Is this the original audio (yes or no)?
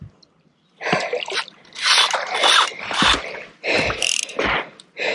yes